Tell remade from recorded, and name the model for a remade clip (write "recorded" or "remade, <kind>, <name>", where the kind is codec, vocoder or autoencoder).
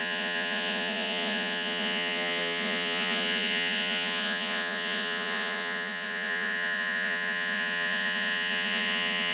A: remade, vocoder, Vocos